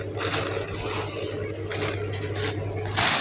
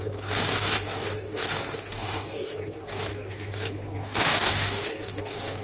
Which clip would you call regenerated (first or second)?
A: second